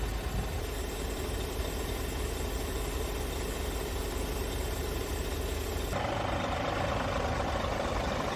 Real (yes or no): yes